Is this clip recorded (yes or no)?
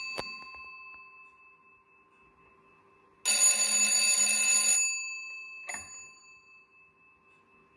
yes